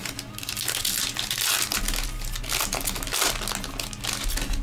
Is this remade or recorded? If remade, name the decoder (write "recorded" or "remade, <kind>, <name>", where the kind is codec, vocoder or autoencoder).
recorded